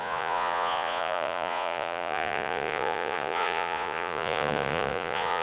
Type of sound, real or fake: fake